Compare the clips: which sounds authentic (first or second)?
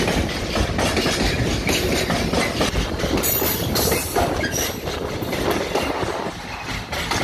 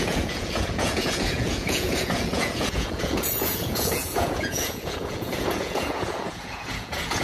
first